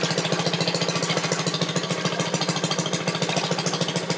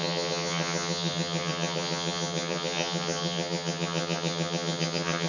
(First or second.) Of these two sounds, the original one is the first